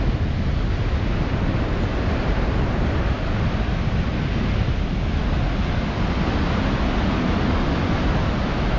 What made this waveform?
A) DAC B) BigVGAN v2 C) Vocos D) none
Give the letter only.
D